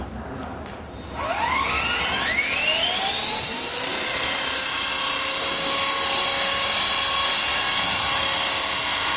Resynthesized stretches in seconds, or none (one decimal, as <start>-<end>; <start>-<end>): none